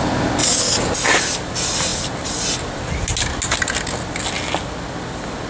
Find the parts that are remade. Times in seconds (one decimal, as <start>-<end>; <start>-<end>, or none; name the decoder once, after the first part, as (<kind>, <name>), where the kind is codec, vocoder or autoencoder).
none